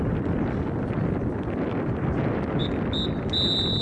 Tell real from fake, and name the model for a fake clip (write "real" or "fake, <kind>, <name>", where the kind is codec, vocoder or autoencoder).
real